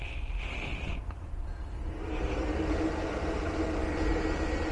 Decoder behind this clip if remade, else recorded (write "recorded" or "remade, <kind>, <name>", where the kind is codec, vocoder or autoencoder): recorded